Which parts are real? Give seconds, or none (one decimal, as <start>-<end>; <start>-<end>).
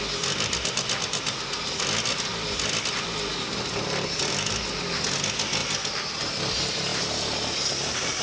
0.0-6.9